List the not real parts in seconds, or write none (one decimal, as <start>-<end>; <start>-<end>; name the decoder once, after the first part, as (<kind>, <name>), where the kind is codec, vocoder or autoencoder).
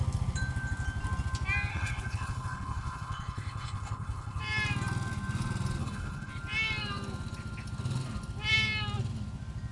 1.7-4.4 (codec, HILCodec); 5.8-6.3